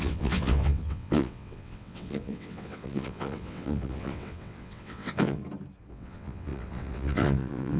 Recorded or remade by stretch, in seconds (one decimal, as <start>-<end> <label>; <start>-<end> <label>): 0.0-5.4 remade; 5.4-5.9 recorded; 5.9-7.8 remade